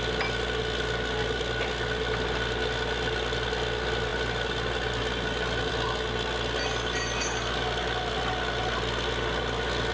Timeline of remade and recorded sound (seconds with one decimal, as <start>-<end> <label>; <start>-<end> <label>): 0.0-9.9 recorded